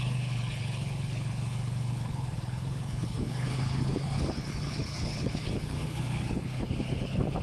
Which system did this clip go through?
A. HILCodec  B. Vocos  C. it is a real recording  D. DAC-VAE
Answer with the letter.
A